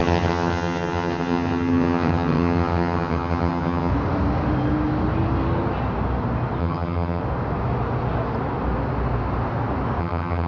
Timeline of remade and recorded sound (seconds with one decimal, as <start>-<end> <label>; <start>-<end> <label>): 0.0-3.9 remade; 3.9-6.6 recorded; 6.6-7.2 remade; 7.2-10.0 recorded; 10.0-10.5 remade

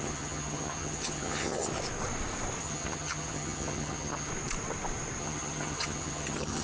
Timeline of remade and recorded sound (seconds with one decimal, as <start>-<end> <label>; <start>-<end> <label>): 0.0-1.7 remade; 1.7-2.6 recorded; 2.6-4.3 remade; 4.3-5.2 recorded; 5.2-6.6 remade